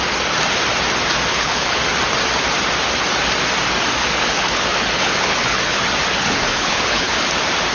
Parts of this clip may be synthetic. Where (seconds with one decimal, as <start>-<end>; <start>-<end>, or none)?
1.3-1.8; 4.0-5.8; 6.2-7.1